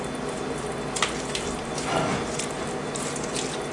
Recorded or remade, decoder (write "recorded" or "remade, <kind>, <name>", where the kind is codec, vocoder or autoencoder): recorded